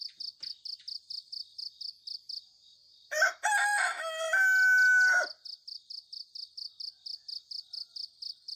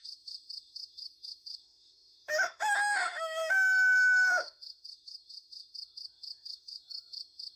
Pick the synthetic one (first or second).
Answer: second